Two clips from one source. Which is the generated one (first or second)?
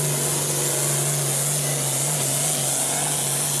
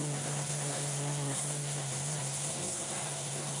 second